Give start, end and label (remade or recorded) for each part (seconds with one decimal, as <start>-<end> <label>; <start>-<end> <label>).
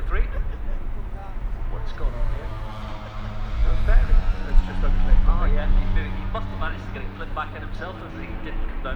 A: 0.0-6.5 recorded; 6.5-7.0 remade; 7.0-9.0 recorded